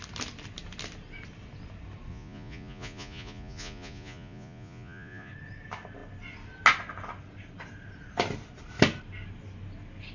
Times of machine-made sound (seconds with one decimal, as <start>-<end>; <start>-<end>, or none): 2.1-5.3